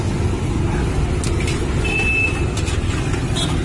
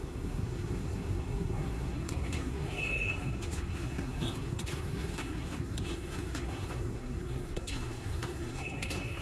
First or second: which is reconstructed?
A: second